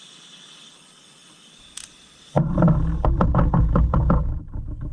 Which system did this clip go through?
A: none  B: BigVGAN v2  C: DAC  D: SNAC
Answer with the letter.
A